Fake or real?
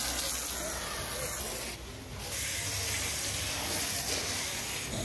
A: real